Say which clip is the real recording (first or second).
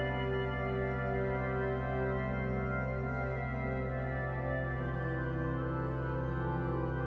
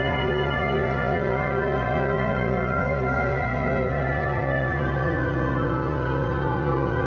first